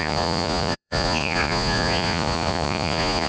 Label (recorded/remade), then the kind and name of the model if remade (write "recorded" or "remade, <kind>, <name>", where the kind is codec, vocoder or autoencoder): remade, vocoder, Vocos